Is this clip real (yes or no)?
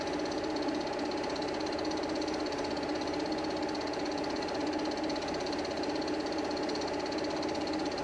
yes